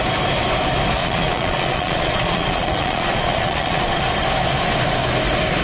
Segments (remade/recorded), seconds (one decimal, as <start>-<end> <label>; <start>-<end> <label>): 0.0-1.0 recorded; 1.0-4.0 remade; 4.0-5.6 recorded